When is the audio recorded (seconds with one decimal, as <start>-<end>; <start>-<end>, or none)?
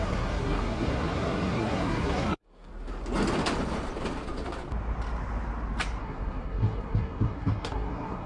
2.7-6.0